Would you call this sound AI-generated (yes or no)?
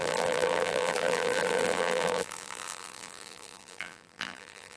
yes